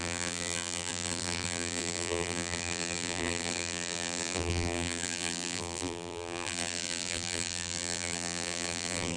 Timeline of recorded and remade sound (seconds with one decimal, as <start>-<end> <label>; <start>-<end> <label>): 0.0-9.2 remade